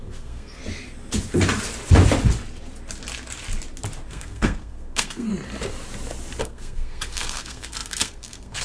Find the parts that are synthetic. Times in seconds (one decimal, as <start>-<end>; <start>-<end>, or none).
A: 0.0-0.6; 4.1-5.3; 6.4-8.6

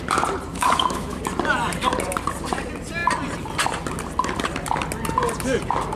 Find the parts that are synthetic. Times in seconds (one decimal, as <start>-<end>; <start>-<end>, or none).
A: 0.5-1.2